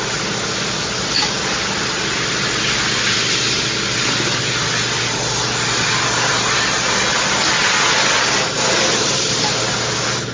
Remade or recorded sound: recorded